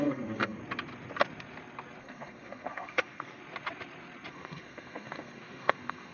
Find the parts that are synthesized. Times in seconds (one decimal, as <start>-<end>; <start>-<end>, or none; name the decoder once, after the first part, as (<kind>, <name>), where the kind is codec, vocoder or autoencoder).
0.0-0.6 (codec, SNAC); 2.0-3.4; 4.3-6.1